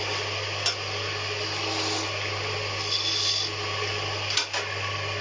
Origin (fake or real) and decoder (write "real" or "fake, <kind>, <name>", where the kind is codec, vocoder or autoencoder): real